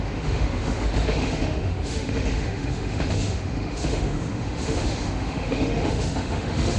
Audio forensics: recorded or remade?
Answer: remade